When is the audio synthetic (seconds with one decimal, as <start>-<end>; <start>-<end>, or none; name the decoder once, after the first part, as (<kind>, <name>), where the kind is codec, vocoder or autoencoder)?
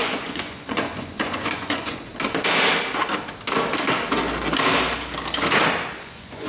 0.0-2.1 (vocoder, Vocos); 6.0-6.5